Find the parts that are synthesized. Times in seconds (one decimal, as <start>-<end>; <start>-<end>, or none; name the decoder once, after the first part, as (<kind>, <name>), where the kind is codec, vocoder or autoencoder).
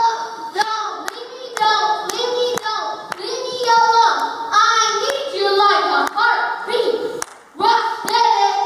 0.0-0.9 (autoencoder, DAC-VAE)